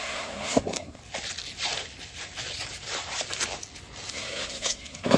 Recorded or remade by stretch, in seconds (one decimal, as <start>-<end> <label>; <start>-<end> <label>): 0.0-1.0 remade; 1.0-4.1 recorded; 4.1-5.2 remade